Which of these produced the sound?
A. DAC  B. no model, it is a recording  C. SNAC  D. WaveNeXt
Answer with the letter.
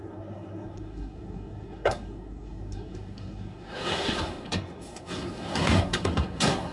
C